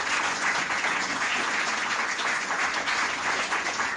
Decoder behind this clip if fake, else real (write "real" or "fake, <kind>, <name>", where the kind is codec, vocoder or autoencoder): fake, vocoder, Vocos